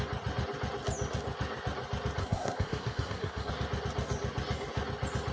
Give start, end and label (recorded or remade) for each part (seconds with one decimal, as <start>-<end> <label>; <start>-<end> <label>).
0.0-2.2 recorded; 2.2-3.5 remade; 3.5-5.3 recorded